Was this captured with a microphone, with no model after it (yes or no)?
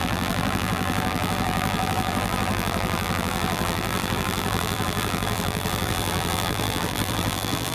no